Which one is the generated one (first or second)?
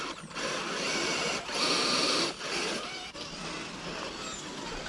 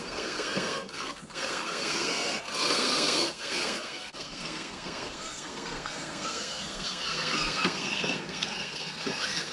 second